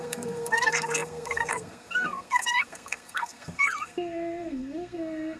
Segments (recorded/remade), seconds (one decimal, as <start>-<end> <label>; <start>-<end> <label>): 0.0-5.4 remade